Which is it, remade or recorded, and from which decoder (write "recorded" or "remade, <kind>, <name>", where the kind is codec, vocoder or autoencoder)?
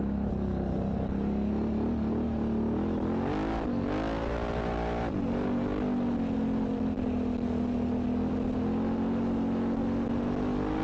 recorded